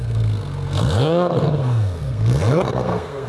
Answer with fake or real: fake